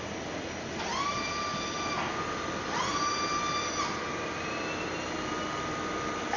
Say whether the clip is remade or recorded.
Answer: recorded